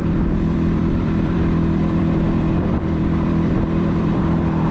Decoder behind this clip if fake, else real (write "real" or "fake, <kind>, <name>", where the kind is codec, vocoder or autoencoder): fake, vocoder, BigVGAN v2